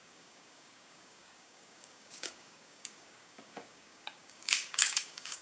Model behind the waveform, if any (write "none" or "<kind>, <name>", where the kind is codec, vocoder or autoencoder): codec, DAC